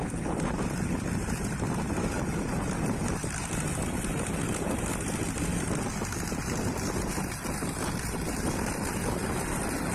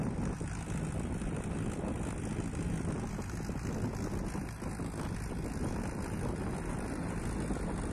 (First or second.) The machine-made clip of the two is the first